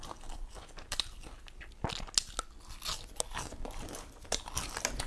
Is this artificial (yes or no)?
no